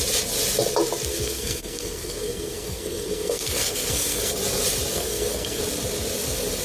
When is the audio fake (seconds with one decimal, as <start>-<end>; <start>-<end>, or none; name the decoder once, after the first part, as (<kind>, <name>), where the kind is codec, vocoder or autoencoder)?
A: 1.1-4.3 (codec, SNAC); 4.9-5.6